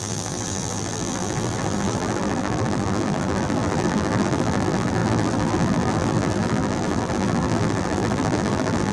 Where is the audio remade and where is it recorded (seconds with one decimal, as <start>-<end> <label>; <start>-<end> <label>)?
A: 0.0-8.9 remade